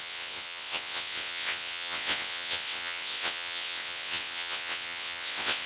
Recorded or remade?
remade